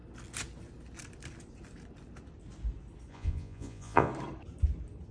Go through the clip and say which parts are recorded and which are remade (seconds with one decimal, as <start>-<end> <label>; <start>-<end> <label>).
0.0-3.1 recorded; 3.1-4.1 remade; 4.1-5.1 recorded